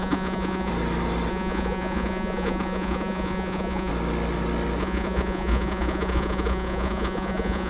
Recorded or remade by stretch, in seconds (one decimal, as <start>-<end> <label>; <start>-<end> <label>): 0.0-0.7 remade; 0.7-1.3 recorded; 1.3-3.9 remade; 3.9-4.8 recorded; 4.8-7.7 remade